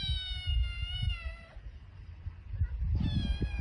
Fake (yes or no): no